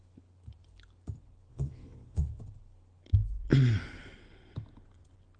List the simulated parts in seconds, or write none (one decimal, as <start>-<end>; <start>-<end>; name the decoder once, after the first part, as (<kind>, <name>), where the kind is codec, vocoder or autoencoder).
1.5-2.4 (vocoder, Vocos)